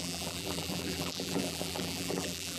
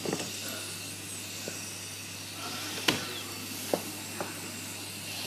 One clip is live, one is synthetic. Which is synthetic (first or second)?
first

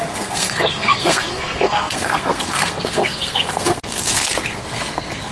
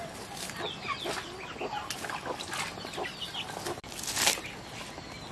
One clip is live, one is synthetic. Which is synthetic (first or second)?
first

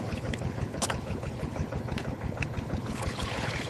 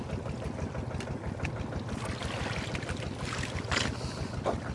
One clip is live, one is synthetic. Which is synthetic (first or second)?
first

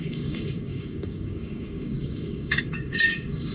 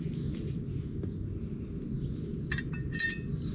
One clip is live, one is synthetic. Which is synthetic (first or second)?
first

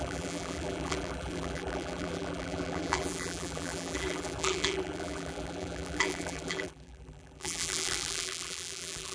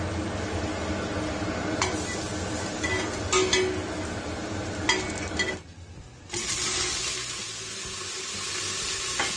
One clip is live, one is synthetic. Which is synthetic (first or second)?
first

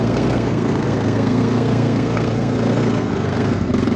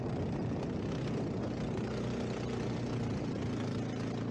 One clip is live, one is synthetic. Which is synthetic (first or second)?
first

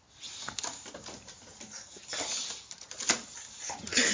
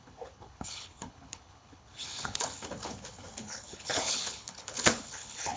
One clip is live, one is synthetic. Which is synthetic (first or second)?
second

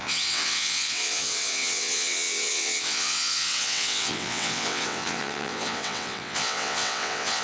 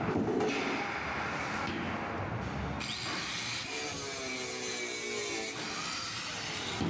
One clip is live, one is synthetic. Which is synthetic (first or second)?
first